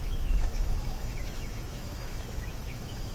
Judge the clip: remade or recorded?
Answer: remade